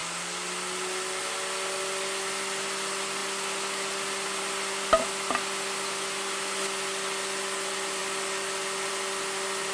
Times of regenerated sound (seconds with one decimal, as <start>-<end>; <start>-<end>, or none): none